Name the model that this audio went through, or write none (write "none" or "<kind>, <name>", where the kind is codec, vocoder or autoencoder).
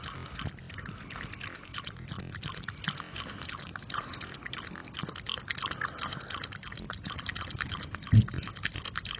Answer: none